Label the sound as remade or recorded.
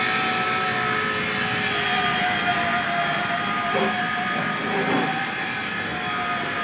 recorded